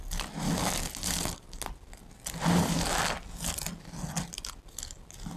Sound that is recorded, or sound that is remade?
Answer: recorded